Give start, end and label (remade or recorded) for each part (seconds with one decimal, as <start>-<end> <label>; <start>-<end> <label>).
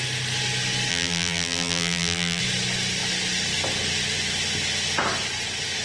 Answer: 0.0-0.9 recorded; 0.9-2.4 remade; 2.4-5.8 recorded